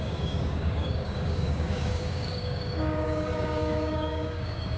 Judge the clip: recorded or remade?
remade